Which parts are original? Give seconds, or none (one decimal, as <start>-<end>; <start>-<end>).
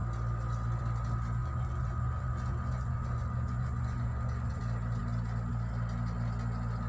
0.0-1.4; 4.6-6.9